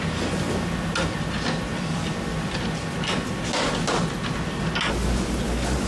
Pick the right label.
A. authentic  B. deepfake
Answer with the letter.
A